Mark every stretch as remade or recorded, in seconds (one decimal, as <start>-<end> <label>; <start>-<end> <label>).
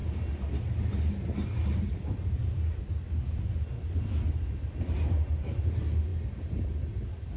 0.0-7.4 recorded